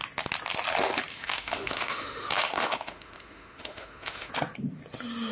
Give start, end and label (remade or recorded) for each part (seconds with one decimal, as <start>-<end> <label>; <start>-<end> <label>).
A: 0.0-1.1 recorded; 1.1-4.3 remade; 4.3-5.3 recorded